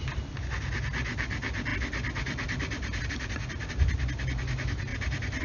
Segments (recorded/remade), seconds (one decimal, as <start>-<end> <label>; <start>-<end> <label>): 0.0-4.9 recorded; 4.9-5.4 remade